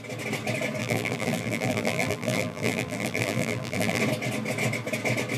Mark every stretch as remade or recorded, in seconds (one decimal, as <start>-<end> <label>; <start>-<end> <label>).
0.0-0.8 recorded; 0.8-4.0 remade; 4.0-5.4 recorded